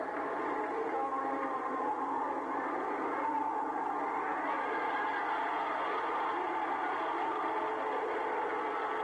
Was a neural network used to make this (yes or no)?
no